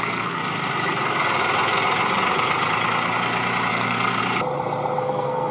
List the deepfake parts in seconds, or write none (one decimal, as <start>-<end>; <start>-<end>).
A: 0.0-0.4; 3.7-4.2; 5.0-5.5